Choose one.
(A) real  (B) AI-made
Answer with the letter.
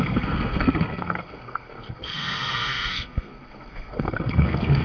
B